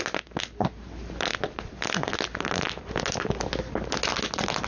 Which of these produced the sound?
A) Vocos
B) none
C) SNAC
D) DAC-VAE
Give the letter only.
B